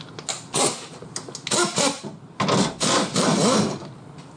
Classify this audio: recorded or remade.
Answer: recorded